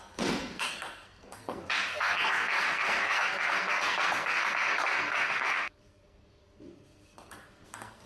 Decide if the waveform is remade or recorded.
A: remade